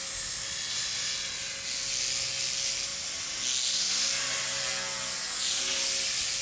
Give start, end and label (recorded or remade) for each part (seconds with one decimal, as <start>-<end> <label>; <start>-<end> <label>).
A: 0.0-6.4 recorded